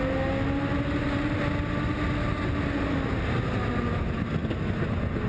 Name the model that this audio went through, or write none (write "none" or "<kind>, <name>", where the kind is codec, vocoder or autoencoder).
none